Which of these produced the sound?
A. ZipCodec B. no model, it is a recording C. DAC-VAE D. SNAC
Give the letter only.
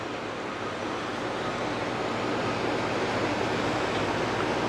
B